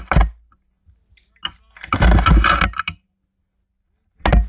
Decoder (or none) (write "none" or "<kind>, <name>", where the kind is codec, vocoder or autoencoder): none